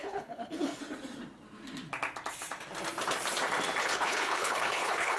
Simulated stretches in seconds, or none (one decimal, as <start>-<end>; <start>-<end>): 0.0-0.8; 3.8-5.2